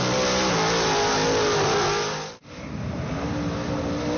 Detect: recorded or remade recorded